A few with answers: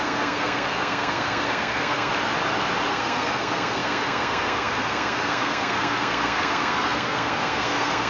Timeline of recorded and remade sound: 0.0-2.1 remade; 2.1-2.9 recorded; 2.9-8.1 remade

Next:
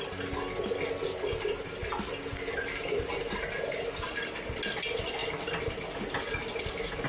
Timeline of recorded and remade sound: 0.0-7.1 recorded

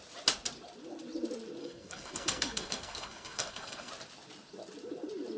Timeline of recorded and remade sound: 0.0-1.6 recorded; 1.6-3.9 remade; 3.9-5.4 recorded

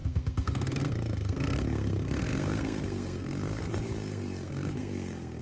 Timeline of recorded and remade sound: 0.0-5.4 remade

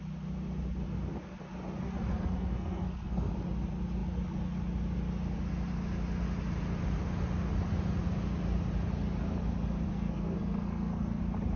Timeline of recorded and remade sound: 0.0-2.1 recorded; 2.1-3.3 remade; 3.3-9.9 recorded; 9.9-11.2 remade; 11.2-11.6 recorded